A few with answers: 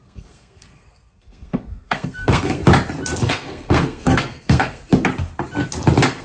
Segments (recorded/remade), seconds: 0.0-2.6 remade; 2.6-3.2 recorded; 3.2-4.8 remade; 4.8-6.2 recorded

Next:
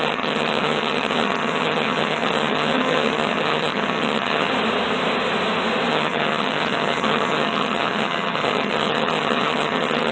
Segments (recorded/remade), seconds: 0.0-4.5 remade; 4.5-5.9 recorded; 5.9-10.1 remade